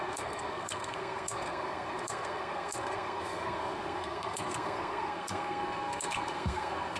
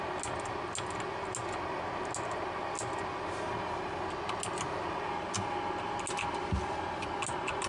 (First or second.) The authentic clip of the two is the second